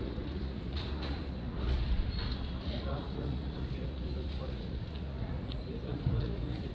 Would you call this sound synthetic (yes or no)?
yes